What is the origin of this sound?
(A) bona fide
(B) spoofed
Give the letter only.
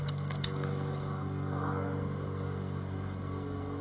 B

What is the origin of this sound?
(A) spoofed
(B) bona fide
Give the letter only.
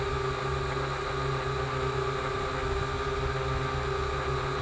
B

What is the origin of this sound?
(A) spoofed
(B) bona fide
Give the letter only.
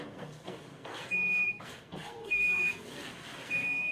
A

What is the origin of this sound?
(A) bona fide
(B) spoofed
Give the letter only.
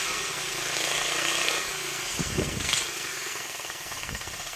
B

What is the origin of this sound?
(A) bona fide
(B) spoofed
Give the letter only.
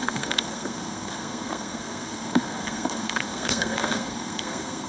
B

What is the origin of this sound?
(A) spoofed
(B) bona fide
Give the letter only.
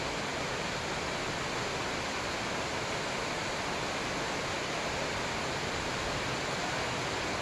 B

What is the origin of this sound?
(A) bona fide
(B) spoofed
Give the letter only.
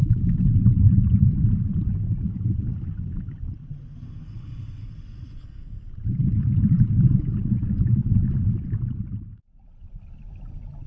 A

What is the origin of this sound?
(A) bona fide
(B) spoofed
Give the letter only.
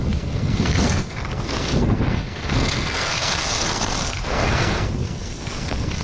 B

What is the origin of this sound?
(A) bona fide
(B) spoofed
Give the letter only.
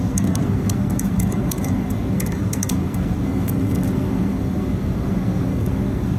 B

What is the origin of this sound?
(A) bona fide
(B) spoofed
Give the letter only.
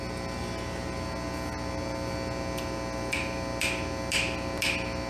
A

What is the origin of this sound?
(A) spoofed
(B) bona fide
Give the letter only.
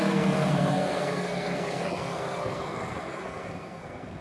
A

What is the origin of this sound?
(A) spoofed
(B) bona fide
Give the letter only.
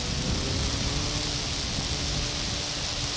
B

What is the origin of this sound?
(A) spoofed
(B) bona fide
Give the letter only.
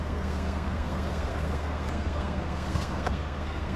A